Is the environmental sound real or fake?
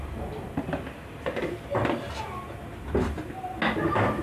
real